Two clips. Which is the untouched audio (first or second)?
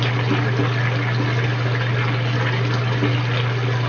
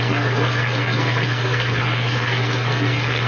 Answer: first